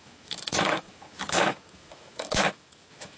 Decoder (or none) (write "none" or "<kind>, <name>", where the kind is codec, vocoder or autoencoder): autoencoder, DAC-VAE